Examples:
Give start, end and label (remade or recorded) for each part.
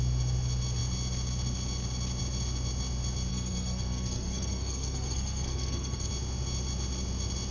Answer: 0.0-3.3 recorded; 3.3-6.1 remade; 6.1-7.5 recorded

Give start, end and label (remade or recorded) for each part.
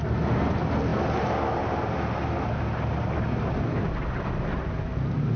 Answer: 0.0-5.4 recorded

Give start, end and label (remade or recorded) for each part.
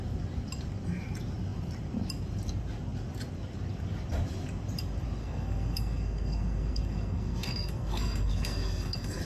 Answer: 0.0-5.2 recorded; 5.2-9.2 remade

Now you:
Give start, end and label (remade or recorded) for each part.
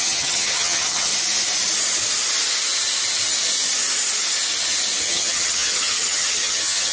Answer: 0.0-1.1 remade; 1.1-5.0 recorded; 5.0-6.9 remade